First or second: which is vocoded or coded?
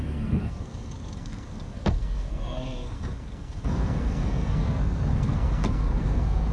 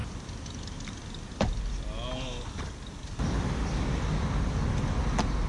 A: first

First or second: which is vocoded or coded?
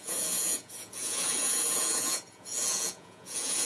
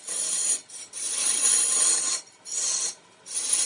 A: first